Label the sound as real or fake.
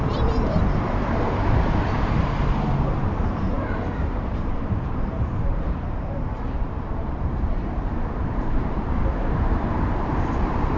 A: fake